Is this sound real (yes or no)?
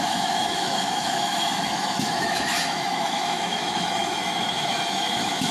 no